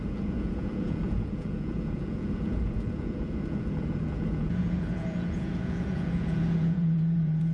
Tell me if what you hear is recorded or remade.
remade